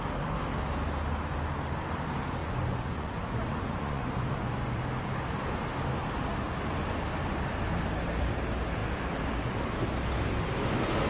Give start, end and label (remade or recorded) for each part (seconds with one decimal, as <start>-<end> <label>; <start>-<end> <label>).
0.0-2.4 recorded; 2.4-4.8 remade; 4.8-11.1 recorded